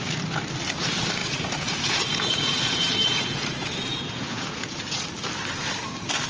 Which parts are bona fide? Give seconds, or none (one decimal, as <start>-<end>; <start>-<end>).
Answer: 0.0-1.2; 5.0-6.3